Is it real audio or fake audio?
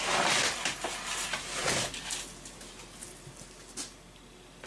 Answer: real